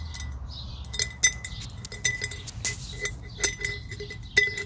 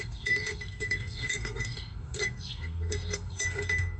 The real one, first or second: first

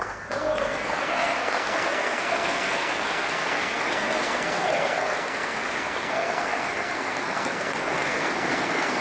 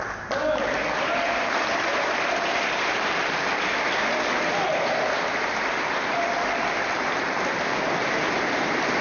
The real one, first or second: second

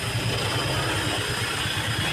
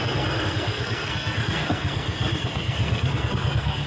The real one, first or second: first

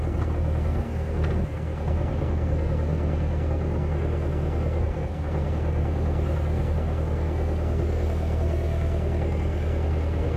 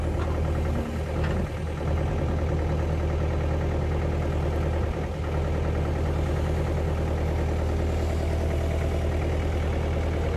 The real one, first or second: second